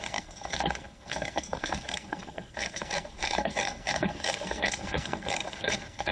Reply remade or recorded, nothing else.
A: remade